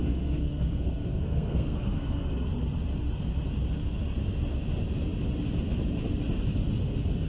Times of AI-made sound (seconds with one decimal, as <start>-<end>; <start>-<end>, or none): 0.0-2.5